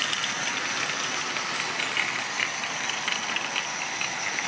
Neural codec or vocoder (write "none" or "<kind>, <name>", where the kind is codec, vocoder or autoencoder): none